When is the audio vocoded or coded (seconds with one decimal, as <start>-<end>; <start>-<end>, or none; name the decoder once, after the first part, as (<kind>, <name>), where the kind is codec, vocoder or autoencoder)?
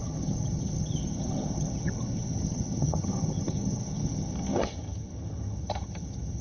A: 0.0-6.4 (vocoder, HiFi-GAN)